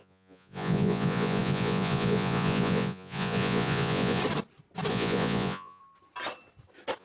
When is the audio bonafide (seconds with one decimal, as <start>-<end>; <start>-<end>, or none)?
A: 4.2-4.9; 5.8-7.0